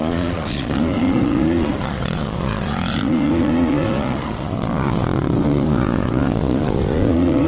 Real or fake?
fake